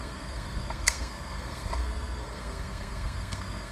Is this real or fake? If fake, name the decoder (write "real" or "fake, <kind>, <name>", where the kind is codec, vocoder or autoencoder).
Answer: fake, codec, SNAC